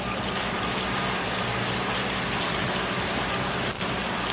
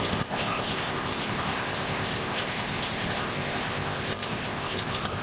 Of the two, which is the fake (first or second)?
second